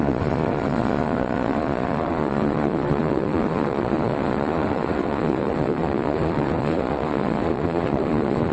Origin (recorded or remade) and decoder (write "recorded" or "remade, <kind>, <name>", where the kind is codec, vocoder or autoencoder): remade, vocoder, Vocos